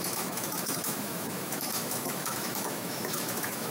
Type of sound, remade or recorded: remade